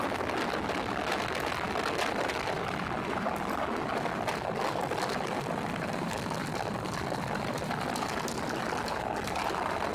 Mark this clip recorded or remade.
recorded